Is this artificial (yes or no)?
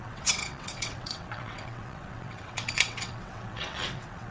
yes